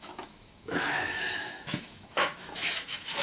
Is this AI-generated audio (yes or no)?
yes